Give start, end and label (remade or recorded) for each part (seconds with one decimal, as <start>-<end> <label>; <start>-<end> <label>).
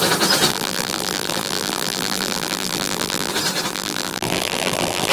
0.0-0.5 recorded; 0.5-3.3 remade; 3.3-3.7 recorded; 3.7-5.1 remade